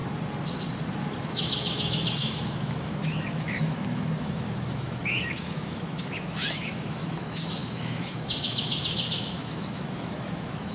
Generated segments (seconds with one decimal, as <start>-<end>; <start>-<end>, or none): 1.2-10.7